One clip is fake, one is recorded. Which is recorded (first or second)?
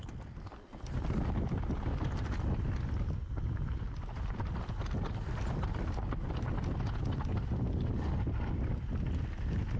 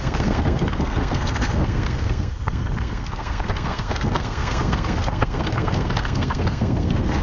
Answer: first